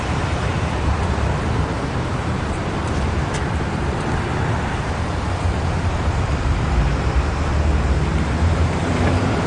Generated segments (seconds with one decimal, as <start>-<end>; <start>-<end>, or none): 0.0-7.5; 8.4-9.5